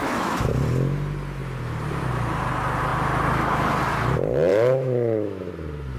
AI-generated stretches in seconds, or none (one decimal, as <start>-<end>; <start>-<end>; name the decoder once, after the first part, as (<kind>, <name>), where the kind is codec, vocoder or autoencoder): 0.0-0.5 (autoencoder, DAC-VAE); 4.5-5.5